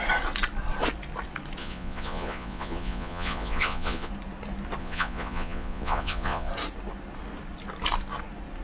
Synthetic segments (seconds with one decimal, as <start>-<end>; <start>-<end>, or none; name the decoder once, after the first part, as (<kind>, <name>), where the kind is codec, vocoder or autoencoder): 1.6-4.1 (vocoder, Vocos); 4.8-6.5